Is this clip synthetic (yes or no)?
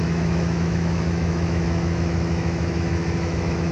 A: yes